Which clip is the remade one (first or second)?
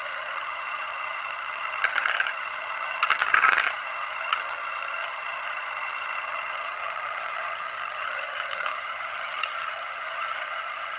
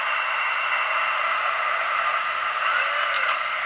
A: first